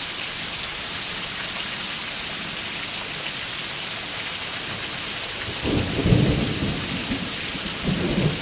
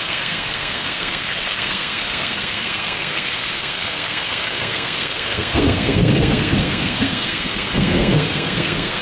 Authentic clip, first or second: first